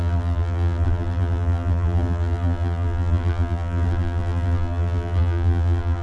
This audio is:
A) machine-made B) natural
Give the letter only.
A